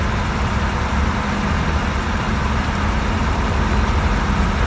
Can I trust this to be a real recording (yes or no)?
yes